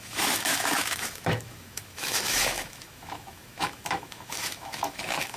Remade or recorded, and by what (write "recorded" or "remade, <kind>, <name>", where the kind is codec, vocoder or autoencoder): remade, autoencoder, DAC-VAE